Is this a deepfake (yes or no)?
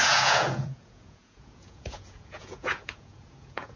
yes